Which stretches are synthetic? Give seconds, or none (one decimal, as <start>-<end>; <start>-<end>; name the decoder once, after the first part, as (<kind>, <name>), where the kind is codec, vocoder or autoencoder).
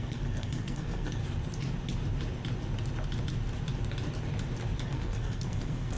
0.0-1.2 (codec, SNAC); 4.8-6.0